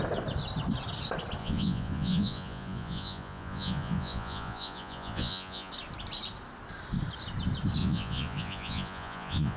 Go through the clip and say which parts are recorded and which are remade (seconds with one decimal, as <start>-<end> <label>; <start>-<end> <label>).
0.0-1.4 recorded; 1.4-5.7 remade; 5.7-7.8 recorded; 7.8-9.6 remade